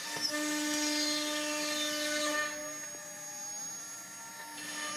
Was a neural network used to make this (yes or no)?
no